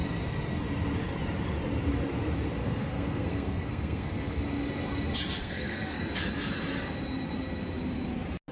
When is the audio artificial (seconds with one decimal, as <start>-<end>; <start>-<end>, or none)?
2.6-4.4; 5.4-6.0